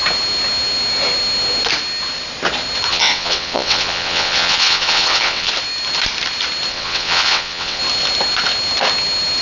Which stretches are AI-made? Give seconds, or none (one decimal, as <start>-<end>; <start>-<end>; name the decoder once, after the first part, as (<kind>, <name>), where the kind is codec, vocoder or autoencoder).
2.9-5.5 (vocoder, WaveNeXt); 6.7-7.8